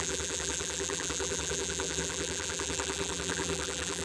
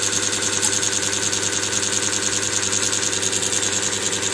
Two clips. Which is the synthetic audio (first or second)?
first